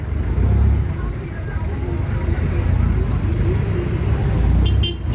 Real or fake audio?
real